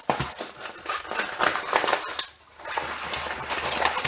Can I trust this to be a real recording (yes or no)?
yes